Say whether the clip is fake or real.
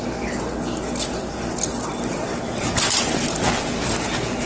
real